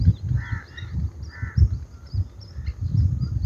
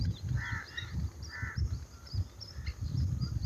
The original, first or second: first